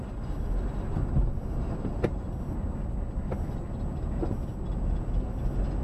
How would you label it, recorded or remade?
recorded